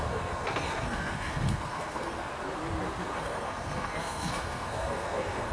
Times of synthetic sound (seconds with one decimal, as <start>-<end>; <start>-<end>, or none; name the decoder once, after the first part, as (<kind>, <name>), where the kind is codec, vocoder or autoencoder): 0.0-2.3 (codec, SNAC); 3.0-5.5

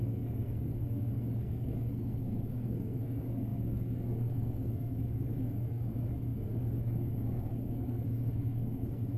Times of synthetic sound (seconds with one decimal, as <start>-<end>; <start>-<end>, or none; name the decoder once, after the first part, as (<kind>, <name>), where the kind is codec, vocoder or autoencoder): 0.0-9.2 (codec, SNAC)